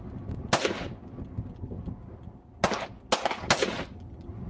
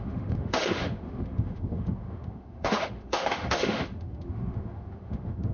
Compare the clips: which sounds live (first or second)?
first